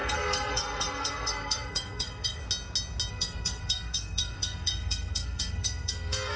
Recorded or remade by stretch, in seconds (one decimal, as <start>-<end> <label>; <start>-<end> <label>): 0.0-2.4 remade; 2.4-3.1 recorded; 3.1-6.4 remade